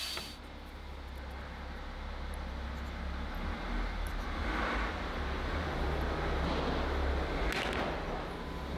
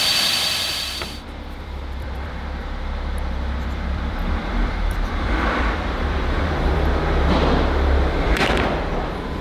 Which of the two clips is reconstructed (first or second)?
second